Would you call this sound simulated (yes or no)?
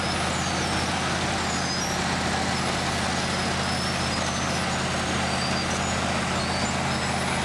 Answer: no